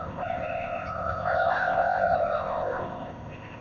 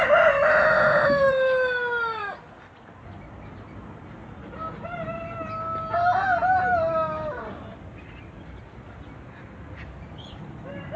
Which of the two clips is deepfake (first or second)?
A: first